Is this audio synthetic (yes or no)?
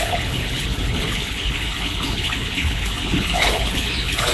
yes